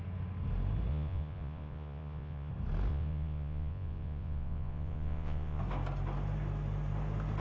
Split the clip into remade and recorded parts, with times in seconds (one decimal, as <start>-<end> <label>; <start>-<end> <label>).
0.0-0.9 recorded; 0.9-2.5 remade; 2.5-2.9 recorded; 2.9-5.6 remade; 5.6-7.4 recorded